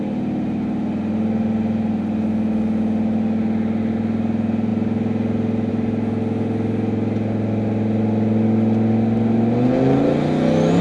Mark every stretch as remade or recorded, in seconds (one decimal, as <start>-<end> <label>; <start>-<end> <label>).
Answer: 0.0-10.8 recorded